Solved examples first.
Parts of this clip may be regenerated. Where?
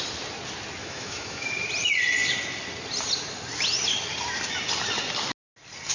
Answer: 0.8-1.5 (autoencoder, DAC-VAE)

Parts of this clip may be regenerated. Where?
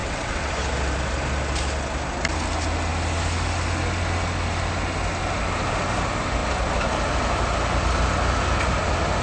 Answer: 0.0-0.5 (vocoder, WaveNeXt)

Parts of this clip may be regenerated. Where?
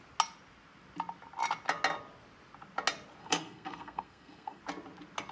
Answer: 3.2-4.6 (codec, SNAC)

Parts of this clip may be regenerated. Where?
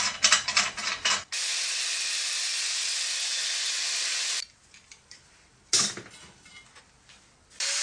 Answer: none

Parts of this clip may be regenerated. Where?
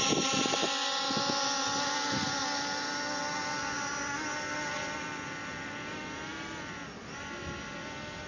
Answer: none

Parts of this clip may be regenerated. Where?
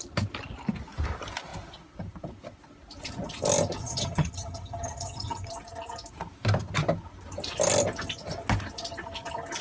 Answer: 3.8-5.5 (vocoder, HiFi-GAN)